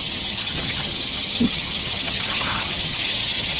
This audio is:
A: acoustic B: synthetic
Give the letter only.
B